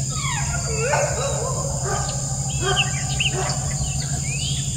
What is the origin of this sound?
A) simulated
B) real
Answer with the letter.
B